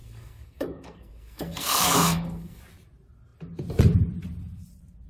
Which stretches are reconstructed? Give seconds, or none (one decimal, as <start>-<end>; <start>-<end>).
0.0-2.6

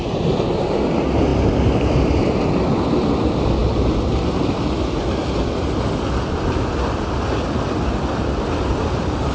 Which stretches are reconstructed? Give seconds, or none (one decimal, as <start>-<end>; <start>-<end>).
none

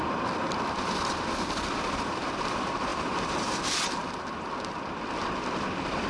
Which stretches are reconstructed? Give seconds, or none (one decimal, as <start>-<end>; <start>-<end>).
none

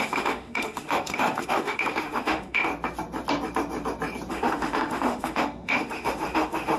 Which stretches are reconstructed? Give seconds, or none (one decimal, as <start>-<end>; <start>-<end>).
0.0-2.7; 4.3-6.8

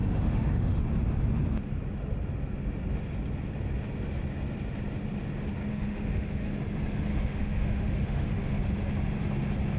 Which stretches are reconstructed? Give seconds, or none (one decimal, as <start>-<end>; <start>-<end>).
0.0-0.8; 5.7-6.5; 7.1-8.6